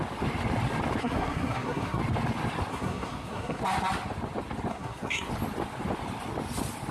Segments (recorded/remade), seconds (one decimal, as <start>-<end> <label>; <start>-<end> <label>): 0.0-1.0 recorded; 1.0-2.0 remade; 2.0-2.7 recorded; 2.7-3.6 remade; 3.6-4.7 recorded; 4.7-5.3 remade; 5.3-6.9 recorded